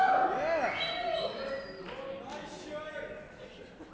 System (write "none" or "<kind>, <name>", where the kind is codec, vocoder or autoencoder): none